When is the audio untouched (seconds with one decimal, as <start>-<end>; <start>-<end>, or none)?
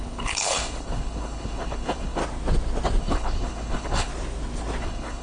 2.2-3.0; 4.1-4.8